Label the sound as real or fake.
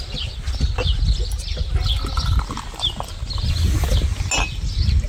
real